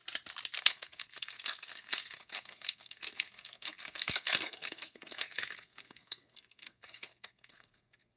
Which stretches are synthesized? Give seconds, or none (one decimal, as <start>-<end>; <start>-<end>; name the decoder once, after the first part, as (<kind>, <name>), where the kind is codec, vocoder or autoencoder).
0.6-8.2 (codec, SNAC)